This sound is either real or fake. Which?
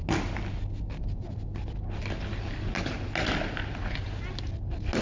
real